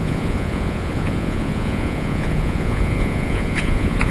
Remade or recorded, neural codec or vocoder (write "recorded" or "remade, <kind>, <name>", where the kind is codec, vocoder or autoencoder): remade, vocoder, Vocos